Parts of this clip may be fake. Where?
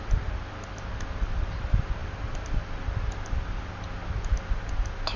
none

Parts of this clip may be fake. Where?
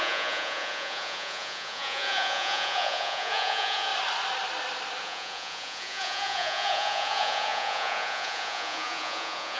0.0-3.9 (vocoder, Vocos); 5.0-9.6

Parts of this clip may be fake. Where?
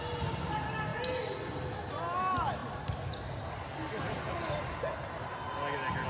none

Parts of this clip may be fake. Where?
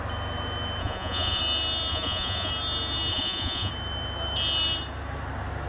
0.8-1.4 (vocoder, Vocos); 1.9-2.5; 3.1-3.7